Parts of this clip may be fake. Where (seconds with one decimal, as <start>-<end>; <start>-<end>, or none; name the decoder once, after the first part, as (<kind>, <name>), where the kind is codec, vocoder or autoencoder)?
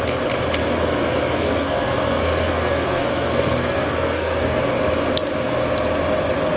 0.6-4.6 (codec, SNAC)